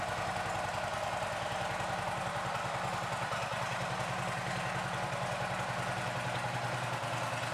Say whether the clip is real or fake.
real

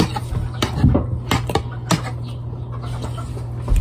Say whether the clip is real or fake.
real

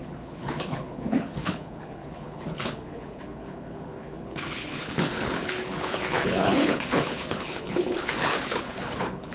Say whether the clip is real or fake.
fake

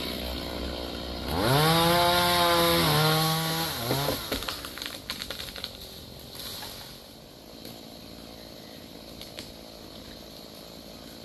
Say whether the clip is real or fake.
real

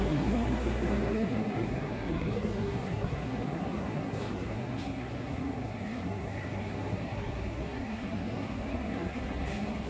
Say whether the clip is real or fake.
fake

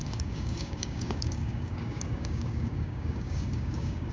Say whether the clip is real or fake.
fake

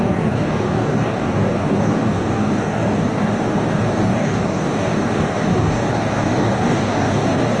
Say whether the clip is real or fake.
fake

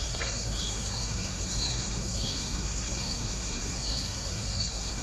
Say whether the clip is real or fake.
fake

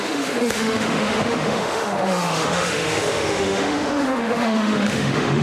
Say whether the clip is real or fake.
fake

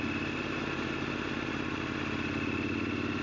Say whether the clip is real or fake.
real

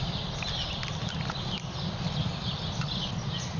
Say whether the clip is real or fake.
real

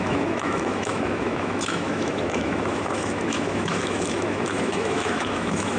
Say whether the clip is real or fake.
fake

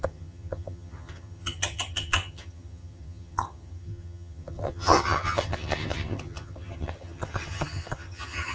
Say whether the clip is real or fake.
fake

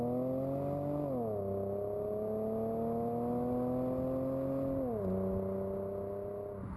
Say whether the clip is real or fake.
real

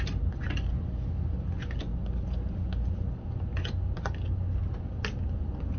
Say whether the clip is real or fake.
real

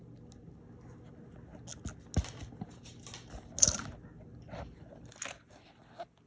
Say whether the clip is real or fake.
real